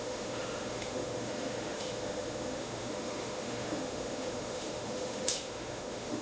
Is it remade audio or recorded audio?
remade